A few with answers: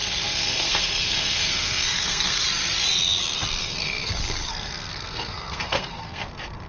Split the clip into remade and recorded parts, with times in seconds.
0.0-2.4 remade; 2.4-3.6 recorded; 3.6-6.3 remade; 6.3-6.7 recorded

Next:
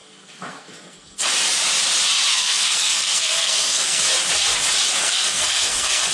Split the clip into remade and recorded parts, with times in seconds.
0.0-1.3 remade; 1.3-2.3 recorded; 2.3-4.0 remade; 4.0-5.0 recorded; 5.0-6.1 remade

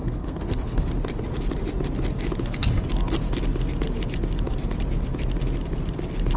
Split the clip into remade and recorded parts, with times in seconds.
0.0-0.9 remade; 0.9-6.4 recorded

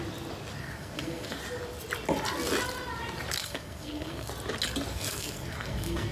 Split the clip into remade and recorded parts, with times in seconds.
0.0-0.6 recorded; 0.6-1.4 remade; 1.4-3.4 recorded; 3.4-4.3 remade; 4.3-4.9 recorded; 4.9-6.1 remade

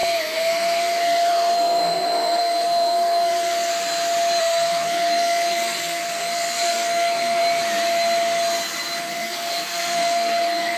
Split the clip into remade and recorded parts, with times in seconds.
0.0-3.7 remade; 3.7-4.4 recorded; 4.4-7.4 remade; 7.4-9.0 recorded; 9.0-10.8 remade

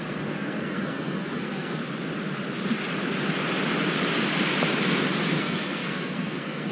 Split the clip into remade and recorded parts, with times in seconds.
0.0-1.8 remade; 1.8-5.4 recorded; 5.4-6.7 remade

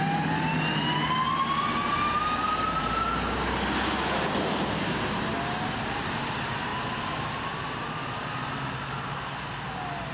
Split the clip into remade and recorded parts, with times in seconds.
0.0-10.1 recorded